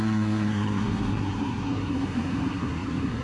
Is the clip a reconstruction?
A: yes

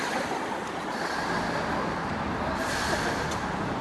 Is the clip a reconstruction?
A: no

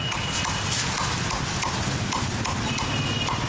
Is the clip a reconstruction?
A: no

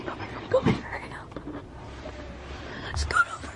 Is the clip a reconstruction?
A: no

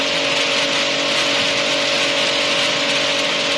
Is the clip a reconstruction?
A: no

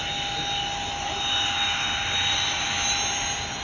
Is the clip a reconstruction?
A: no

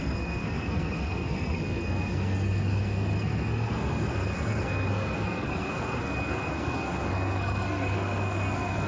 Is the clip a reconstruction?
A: yes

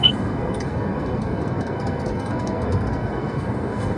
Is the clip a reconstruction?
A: yes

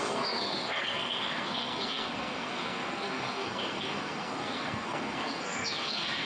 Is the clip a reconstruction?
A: yes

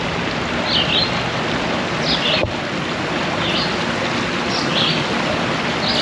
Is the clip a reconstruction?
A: no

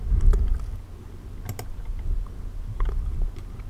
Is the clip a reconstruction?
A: no